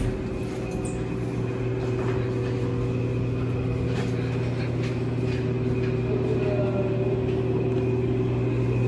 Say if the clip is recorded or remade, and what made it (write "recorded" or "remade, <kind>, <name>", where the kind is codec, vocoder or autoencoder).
recorded